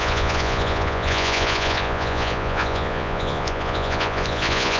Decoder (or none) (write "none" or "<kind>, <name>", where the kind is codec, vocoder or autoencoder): vocoder, Vocos